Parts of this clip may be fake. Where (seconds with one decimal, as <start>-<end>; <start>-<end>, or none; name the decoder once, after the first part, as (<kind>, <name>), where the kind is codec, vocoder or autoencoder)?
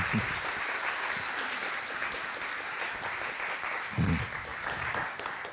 0.8-4.1 (vocoder, BigVGAN v2); 4.5-5.5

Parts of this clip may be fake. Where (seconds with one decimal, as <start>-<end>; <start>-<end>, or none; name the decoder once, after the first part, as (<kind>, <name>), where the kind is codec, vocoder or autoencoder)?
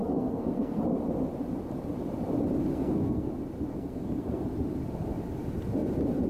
0.0-0.8 (codec, SNAC); 2.7-3.3; 3.7-4.4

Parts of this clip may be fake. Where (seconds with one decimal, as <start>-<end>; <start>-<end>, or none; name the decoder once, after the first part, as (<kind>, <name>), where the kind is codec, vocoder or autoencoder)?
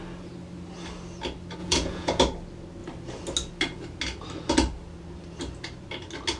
1.6-2.2 (vocoder, Vocos)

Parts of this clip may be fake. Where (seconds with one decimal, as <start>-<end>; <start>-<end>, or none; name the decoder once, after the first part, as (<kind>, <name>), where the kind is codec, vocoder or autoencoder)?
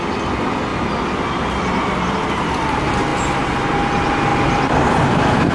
none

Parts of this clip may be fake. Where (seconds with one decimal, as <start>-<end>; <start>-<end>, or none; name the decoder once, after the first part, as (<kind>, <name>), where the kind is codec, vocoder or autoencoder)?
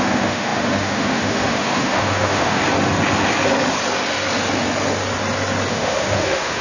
0.0-2.6 (autoencoder, DAC-VAE); 5.7-6.6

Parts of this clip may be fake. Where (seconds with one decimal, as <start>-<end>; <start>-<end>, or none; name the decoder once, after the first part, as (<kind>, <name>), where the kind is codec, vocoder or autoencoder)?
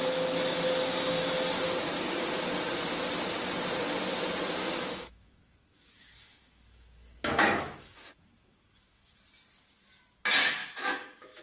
4.6-9.2 (autoencoder, DAC-VAE); 10.6-11.4